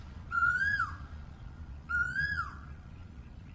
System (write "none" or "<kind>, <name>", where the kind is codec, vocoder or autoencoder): vocoder, Vocos